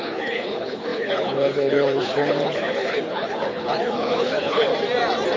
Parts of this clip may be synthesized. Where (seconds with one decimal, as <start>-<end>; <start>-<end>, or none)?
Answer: 0.0-4.7